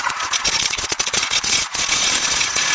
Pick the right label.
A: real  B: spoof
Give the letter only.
B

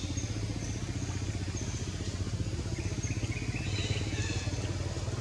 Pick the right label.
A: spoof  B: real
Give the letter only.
B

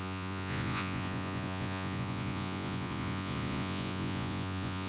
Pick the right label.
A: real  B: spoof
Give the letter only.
B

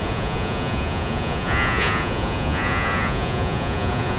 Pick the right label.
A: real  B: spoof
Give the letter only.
B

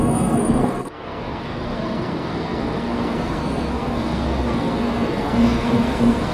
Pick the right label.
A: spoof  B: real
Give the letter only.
A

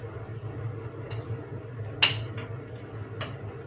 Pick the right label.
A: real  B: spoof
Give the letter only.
A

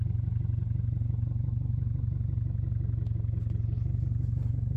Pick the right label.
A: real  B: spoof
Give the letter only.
A